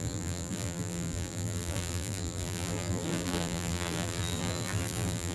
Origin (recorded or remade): remade